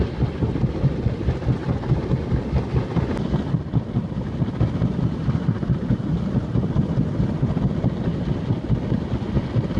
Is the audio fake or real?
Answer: real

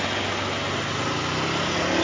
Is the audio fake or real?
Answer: real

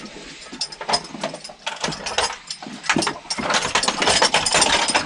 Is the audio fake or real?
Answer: real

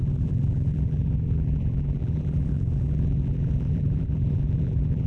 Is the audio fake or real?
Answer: fake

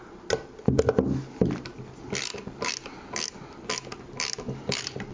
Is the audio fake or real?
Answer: real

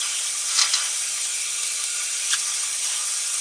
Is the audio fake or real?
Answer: real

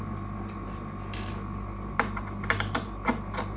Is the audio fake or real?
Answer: real